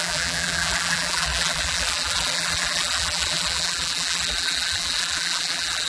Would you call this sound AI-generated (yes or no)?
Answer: yes